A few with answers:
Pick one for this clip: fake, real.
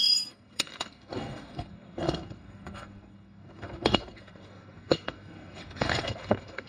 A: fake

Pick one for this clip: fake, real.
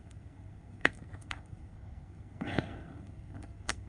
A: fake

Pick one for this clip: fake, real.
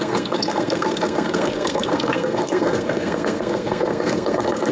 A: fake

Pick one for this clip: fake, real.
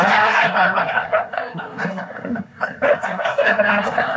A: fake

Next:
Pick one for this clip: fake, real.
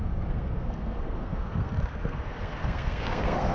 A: fake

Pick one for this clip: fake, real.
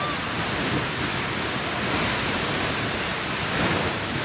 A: real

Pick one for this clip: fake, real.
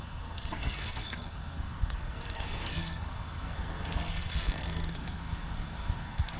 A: fake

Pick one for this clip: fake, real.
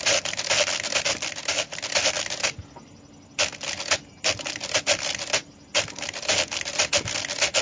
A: real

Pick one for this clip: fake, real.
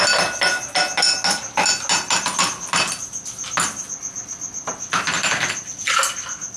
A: real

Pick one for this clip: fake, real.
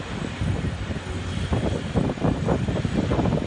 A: real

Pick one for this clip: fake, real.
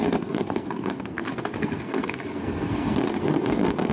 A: fake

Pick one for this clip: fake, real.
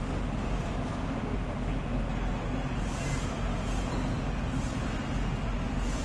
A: real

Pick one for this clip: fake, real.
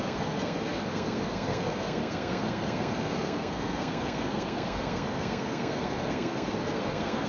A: fake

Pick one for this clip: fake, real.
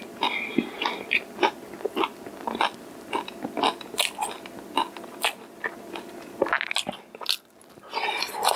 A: real